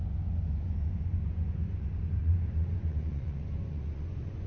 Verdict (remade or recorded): remade